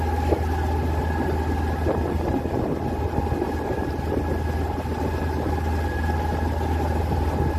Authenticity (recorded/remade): recorded